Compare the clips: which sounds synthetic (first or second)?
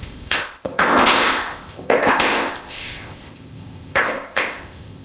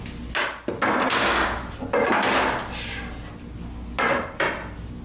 first